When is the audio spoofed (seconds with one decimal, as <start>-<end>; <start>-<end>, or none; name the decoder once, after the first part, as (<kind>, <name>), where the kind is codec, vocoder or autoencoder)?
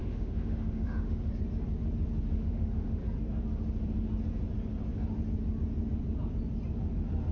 0.0-1.3 (autoencoder, DAC-VAE); 2.3-3.0